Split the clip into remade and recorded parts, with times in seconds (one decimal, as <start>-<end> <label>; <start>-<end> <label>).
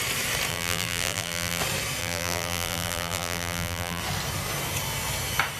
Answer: 0.0-0.5 recorded; 0.5-1.6 remade; 1.6-2.0 recorded; 2.0-4.0 remade; 4.0-5.6 recorded